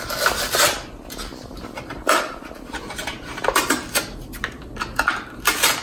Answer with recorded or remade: recorded